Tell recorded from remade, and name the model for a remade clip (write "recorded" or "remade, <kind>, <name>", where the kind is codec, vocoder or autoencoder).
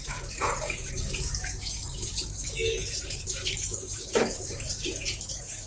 remade, codec, DAC